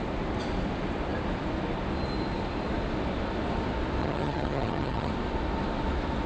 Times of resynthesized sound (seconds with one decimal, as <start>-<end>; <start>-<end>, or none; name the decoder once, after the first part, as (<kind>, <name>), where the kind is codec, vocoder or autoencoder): 4.0-5.1 (vocoder, HiFi-GAN)